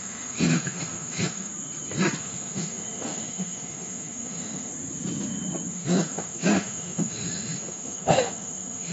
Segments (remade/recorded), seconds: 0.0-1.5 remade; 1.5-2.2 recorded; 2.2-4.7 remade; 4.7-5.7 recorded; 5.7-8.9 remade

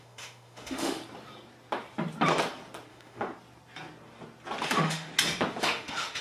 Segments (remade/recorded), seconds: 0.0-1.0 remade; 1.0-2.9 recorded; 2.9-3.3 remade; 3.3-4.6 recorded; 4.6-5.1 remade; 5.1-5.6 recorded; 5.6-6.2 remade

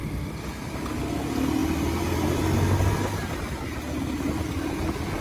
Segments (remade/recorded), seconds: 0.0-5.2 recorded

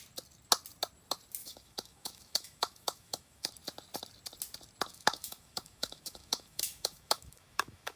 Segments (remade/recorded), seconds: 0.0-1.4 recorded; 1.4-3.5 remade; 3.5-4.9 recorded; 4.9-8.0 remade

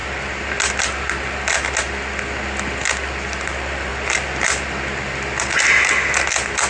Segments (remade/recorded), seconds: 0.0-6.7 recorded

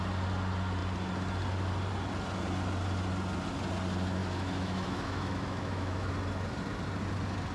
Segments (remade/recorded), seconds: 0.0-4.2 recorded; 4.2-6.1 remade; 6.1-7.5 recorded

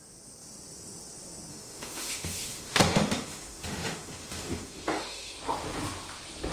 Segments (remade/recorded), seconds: 0.0-1.5 recorded; 1.5-5.4 remade; 5.4-6.5 recorded